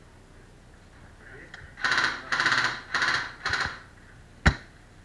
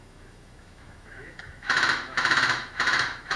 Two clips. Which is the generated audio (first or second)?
second